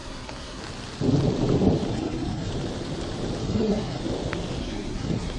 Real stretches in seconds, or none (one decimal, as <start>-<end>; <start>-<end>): 0.6-1.9; 2.5-3.4; 4.0-4.6